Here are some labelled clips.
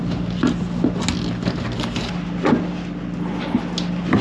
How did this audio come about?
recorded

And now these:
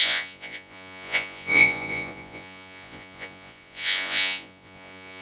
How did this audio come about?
remade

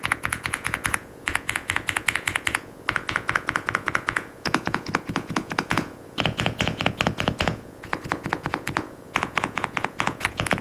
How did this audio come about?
remade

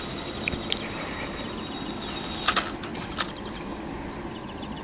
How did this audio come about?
recorded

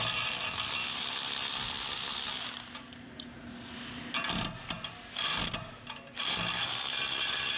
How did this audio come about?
recorded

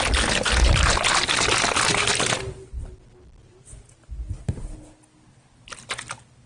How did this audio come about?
recorded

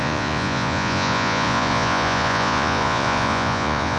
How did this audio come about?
remade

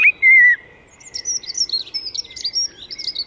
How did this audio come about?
recorded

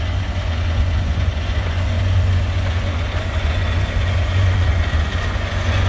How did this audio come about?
remade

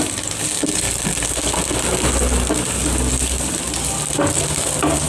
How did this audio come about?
recorded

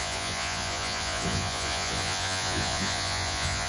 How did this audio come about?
remade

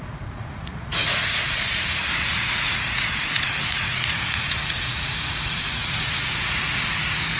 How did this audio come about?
remade